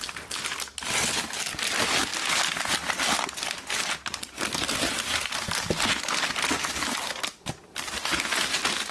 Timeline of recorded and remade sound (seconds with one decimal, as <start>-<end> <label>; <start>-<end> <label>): 0.0-8.9 recorded